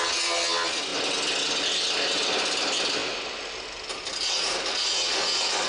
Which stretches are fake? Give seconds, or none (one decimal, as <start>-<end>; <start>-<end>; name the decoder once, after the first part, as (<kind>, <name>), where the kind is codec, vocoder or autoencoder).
none